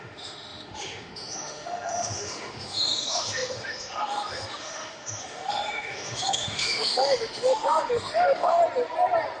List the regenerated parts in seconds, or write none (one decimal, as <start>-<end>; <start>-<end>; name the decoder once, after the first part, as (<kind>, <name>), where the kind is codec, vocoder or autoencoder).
0.0-8.6 (autoencoder, DAC-VAE)